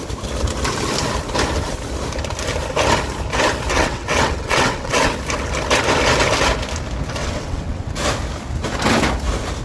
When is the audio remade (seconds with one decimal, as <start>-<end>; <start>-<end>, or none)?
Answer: 3.7-5.1; 7.2-7.9